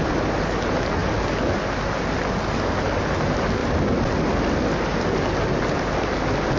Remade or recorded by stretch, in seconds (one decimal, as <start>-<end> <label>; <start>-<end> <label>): 0.0-6.6 recorded